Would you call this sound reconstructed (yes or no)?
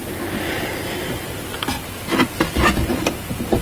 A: no